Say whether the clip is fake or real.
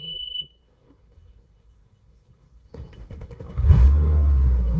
fake